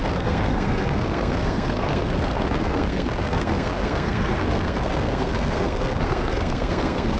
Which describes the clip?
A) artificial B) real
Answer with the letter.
A